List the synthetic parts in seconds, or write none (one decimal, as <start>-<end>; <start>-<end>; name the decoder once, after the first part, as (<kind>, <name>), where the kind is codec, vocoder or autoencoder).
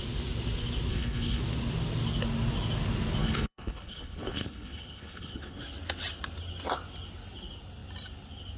0.9-1.4 (codec, HILCodec); 3.2-5.6